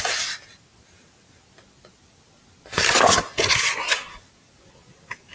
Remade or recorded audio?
recorded